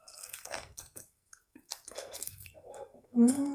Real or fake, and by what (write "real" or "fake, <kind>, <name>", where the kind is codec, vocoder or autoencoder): fake, codec, SNAC